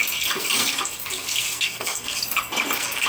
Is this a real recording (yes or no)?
no